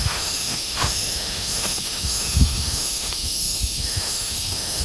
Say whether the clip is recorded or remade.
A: remade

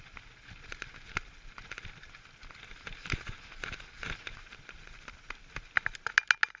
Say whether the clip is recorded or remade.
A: recorded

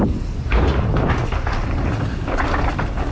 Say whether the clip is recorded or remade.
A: recorded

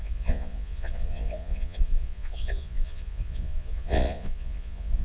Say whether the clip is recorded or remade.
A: remade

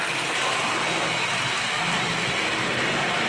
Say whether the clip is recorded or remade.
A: recorded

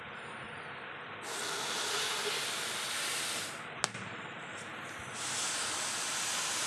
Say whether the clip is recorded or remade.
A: recorded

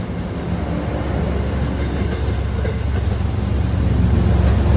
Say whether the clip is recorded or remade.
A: recorded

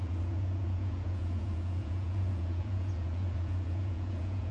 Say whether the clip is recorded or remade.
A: remade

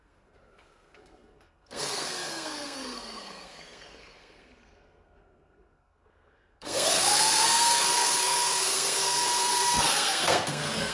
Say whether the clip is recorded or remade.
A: remade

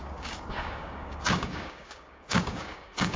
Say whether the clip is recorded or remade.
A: remade